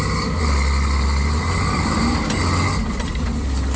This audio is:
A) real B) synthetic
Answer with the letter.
A